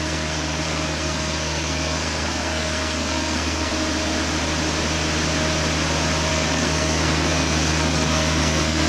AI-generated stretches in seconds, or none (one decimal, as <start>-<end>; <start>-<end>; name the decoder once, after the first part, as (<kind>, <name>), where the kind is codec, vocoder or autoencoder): 0.0-3.7 (codec, SNAC); 6.3-8.9